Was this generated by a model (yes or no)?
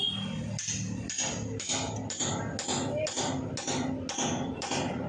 no